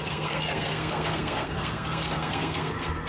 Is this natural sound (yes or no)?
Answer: no